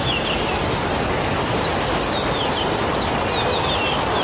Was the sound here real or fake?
real